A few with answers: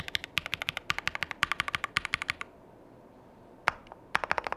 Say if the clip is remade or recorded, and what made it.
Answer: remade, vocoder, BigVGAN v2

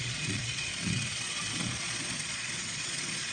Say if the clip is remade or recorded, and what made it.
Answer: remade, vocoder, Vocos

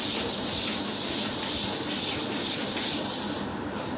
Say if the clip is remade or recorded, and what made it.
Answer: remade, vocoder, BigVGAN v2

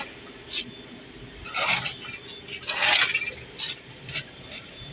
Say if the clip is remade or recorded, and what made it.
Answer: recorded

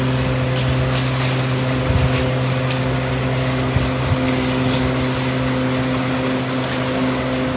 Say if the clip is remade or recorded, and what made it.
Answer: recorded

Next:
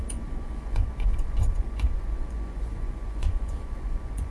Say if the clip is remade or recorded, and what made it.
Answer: remade, vocoder, Vocos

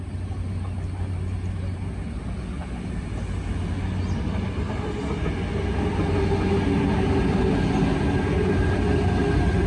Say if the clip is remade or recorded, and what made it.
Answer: recorded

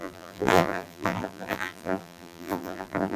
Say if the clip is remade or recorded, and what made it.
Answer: remade, vocoder, BigVGAN v2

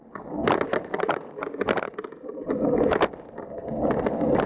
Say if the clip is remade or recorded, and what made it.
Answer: recorded